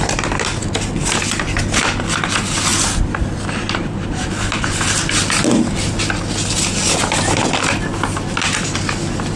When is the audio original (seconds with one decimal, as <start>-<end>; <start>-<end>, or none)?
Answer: 0.0-9.4